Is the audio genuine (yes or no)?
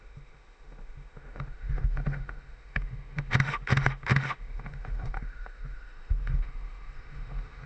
no